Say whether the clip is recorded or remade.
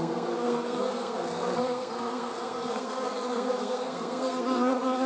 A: remade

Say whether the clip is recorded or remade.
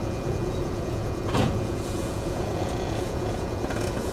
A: remade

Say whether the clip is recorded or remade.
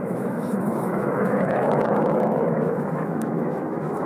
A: remade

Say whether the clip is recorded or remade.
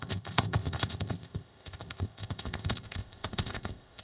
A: remade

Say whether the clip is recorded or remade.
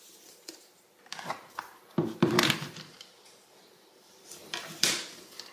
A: remade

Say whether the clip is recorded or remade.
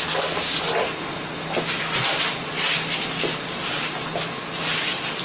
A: recorded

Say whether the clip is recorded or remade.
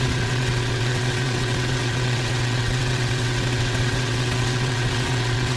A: remade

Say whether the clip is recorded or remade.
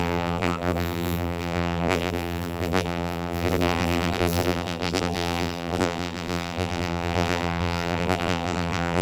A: remade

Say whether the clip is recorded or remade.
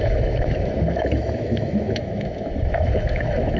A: remade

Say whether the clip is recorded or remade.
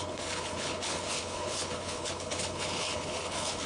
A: remade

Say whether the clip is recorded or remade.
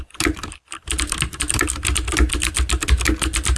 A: recorded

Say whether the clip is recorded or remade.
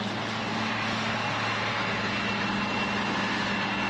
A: recorded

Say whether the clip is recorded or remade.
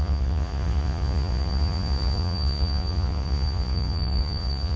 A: remade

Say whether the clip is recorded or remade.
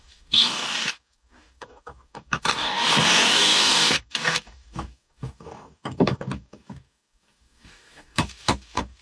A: remade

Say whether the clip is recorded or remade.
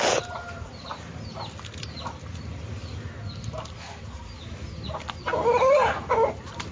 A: recorded